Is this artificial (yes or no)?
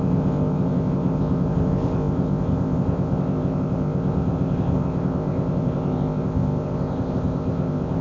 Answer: yes